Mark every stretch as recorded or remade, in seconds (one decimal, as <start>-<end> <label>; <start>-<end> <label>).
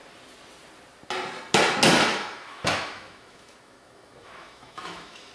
0.0-2.1 recorded; 2.1-5.3 remade